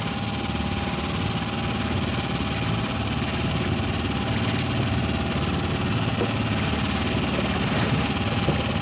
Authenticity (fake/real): real